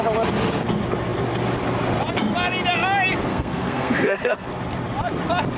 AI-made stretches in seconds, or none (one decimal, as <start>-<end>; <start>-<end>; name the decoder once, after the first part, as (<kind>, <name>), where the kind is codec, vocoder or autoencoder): 3.3-4.6 (codec, SNAC)